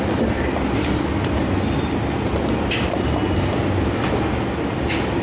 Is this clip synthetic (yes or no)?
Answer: no